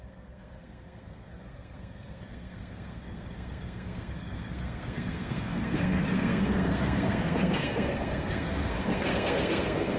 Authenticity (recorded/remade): remade